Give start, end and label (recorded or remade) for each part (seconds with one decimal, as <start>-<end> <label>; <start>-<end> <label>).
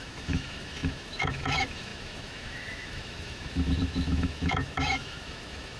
0.0-5.8 remade